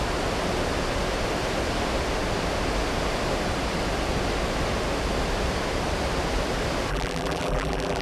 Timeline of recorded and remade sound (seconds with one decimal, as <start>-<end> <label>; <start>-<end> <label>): 0.0-6.9 recorded; 6.9-8.0 remade